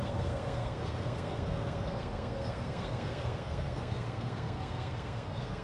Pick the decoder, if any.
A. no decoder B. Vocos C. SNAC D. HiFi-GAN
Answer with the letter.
C